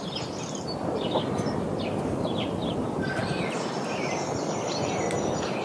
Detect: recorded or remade remade